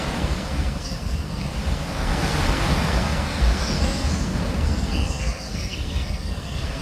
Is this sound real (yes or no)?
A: no